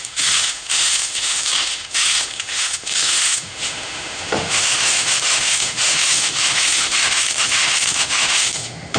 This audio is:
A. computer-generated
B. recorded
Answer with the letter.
A